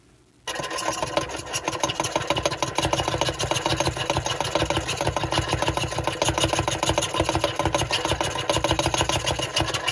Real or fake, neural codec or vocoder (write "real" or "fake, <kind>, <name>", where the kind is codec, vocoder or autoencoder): real